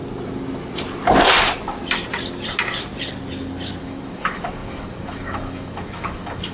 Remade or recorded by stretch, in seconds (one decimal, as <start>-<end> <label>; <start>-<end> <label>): 0.0-3.8 recorded; 3.8-6.5 remade